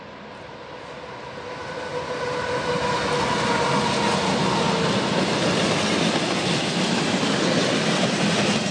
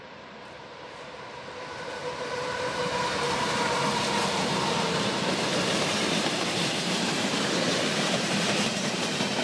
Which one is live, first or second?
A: first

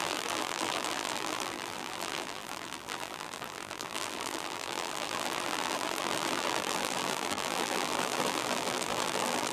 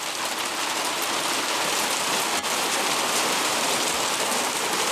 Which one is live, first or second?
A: second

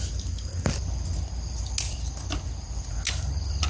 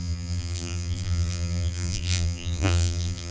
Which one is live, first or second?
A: first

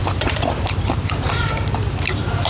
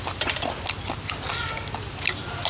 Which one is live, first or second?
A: second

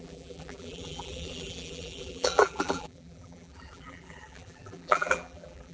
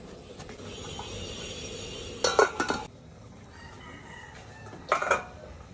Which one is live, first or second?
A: second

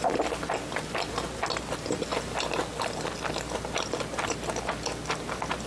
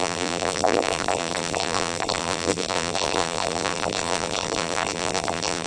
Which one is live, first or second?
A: first